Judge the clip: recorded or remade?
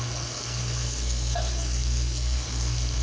remade